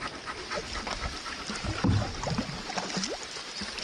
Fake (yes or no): no